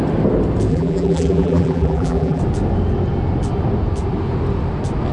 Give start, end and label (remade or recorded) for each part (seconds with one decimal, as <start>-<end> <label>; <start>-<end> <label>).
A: 0.0-0.7 recorded; 0.7-2.4 remade; 2.4-5.1 recorded